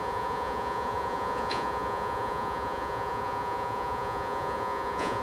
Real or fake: fake